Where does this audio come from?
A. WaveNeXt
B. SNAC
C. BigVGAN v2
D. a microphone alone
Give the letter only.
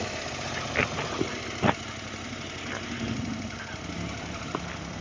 D